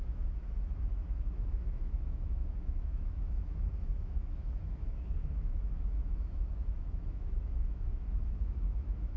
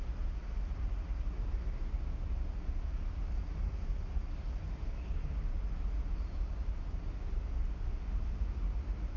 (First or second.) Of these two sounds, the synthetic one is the first